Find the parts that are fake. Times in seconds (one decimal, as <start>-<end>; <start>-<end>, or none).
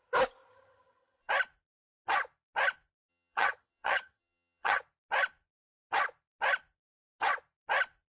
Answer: 0.5-1.3; 3.1-4.8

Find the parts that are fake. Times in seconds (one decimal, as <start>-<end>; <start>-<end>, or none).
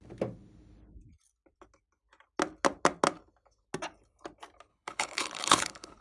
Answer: 4.7-6.0